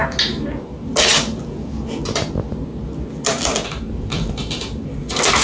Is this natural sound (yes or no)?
yes